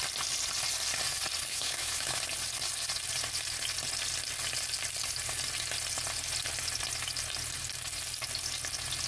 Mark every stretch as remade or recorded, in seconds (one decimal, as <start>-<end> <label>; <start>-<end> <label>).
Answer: 0.0-1.5 recorded; 1.5-2.2 remade; 2.2-9.1 recorded